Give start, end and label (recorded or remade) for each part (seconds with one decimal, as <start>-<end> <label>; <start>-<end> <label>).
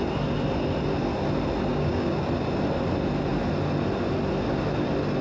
0.0-1.7 recorded; 1.7-2.3 remade; 2.3-5.2 recorded